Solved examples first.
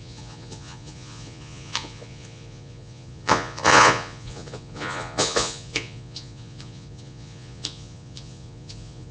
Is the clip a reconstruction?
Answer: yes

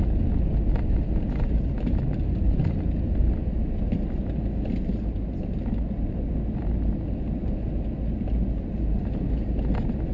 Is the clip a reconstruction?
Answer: no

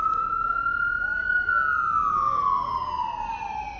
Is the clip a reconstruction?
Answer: no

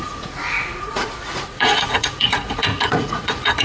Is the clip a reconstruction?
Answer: yes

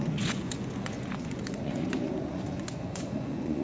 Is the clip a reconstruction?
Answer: yes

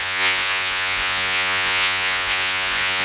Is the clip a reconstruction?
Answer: yes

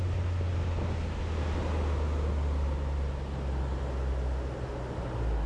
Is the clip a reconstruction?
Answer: no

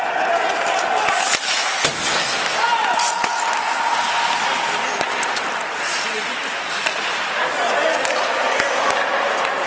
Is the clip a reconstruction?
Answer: no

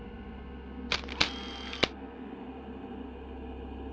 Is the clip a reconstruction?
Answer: no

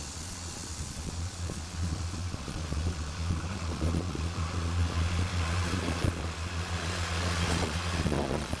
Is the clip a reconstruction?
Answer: yes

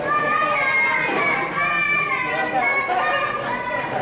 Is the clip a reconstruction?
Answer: no